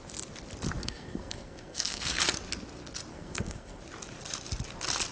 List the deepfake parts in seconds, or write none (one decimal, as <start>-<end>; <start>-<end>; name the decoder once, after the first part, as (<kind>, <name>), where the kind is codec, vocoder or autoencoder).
0.8-2.2 (codec, SNAC); 3.1-3.8